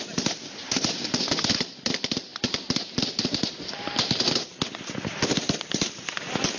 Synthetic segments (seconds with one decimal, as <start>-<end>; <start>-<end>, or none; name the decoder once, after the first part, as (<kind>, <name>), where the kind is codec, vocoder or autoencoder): none